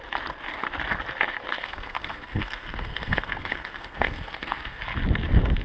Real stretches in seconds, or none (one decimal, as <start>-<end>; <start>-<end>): 0.0-1.5; 4.8-5.6